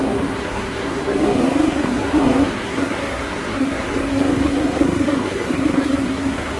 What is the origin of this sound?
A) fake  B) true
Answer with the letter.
A